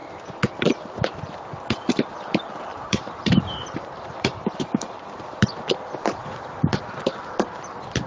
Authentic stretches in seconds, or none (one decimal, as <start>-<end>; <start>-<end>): 0.0-2.7; 5.5-8.1